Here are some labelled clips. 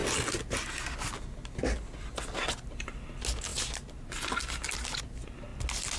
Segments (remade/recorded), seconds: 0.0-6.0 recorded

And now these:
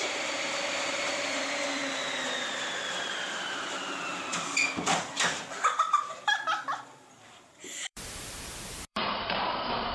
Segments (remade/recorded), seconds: 0.0-1.8 remade; 1.8-2.4 recorded; 2.4-4.3 remade; 4.3-7.2 recorded; 7.2-9.9 remade

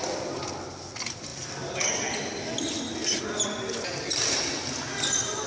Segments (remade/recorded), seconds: 0.0-5.5 recorded

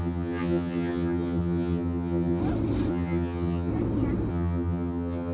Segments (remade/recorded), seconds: 0.0-2.4 remade; 2.4-2.9 recorded; 2.9-3.7 remade; 3.7-4.3 recorded; 4.3-5.3 remade

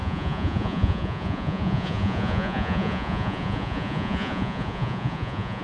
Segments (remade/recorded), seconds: 0.0-5.6 remade

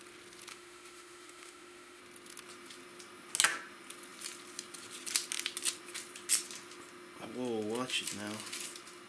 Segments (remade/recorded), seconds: 0.0-0.5 recorded; 0.5-2.0 remade; 2.0-9.1 recorded

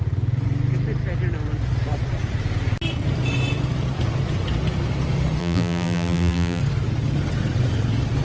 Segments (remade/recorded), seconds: 0.0-5.4 recorded; 5.4-6.6 remade; 6.6-8.2 recorded